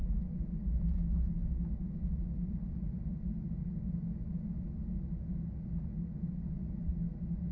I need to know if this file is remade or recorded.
recorded